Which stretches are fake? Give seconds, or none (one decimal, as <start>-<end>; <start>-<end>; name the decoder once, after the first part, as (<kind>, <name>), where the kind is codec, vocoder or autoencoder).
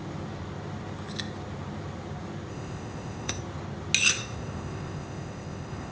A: 2.5-3.4 (codec, ZipCodec); 4.1-5.9